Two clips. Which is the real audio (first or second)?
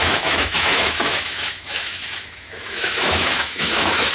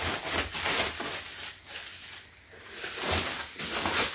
second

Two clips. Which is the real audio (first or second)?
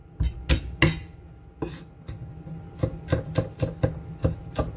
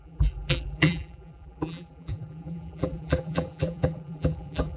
first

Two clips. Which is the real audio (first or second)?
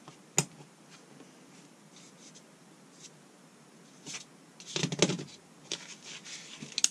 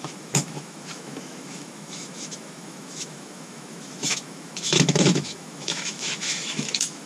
first